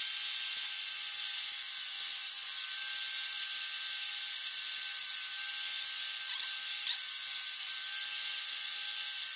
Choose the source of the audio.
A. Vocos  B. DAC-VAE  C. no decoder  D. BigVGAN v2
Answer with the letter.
C